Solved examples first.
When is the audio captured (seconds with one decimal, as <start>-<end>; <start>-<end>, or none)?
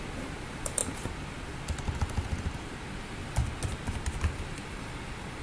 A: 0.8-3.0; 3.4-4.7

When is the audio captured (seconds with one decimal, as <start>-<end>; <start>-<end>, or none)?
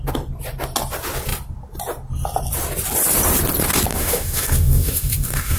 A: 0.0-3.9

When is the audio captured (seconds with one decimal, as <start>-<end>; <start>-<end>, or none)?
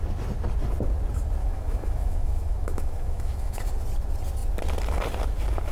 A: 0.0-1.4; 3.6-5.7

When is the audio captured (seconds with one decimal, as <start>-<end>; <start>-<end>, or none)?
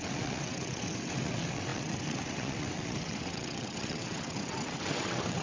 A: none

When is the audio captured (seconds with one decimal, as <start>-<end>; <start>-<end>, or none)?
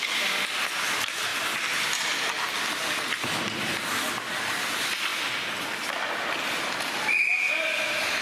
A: 0.0-8.2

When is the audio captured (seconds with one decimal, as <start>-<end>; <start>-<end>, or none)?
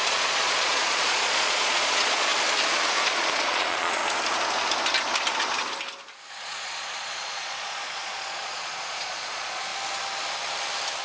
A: 2.3-2.9; 4.0-6.3; 9.7-11.0